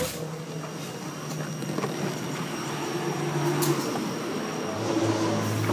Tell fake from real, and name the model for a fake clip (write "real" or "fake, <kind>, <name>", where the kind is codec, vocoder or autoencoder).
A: real